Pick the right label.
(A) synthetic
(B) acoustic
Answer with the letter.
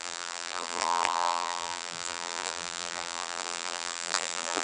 A